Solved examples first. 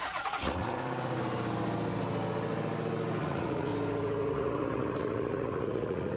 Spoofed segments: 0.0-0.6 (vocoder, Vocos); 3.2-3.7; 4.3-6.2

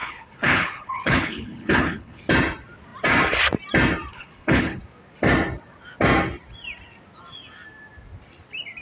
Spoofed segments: 0.0-2.2 (codec, HILCodec); 4.1-4.8

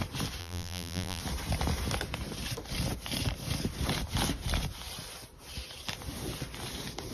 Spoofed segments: 0.4-1.2 (vocoder, BigVGAN v2)

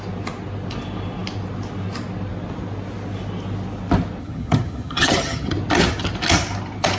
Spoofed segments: 4.2-5.5 (vocoder, HiFi-GAN)

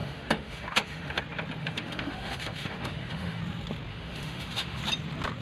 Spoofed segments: 0.0-1.2 (autoencoder, DAC-VAE); 1.6-3.4; 3.9-4.8

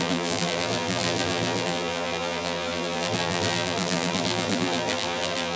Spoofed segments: 0.0-5.6 (vocoder, BigVGAN v2)

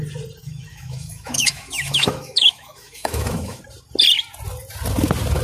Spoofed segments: 0.4-3.6 (autoencoder, DAC-VAE)